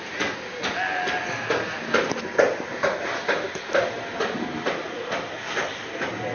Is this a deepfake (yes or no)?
no